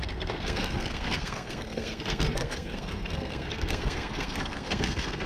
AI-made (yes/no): yes